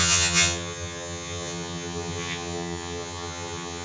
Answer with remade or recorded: remade